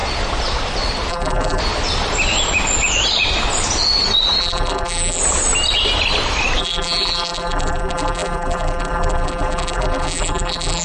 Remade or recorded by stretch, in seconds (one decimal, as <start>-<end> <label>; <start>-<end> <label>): 0.0-1.1 recorded; 1.1-1.6 remade; 1.6-4.4 recorded; 4.4-5.2 remade; 5.2-6.6 recorded; 6.6-10.8 remade